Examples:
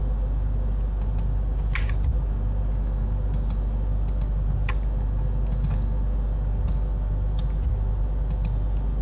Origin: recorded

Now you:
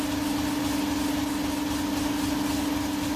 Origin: recorded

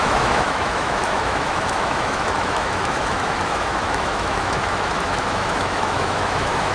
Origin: remade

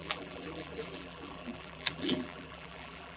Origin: remade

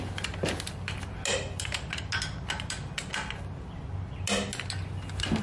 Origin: recorded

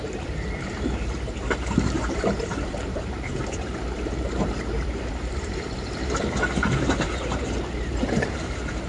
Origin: remade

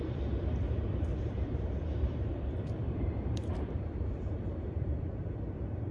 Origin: remade